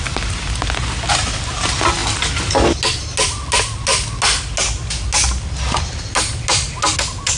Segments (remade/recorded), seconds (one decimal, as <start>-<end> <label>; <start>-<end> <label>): 0.0-7.4 recorded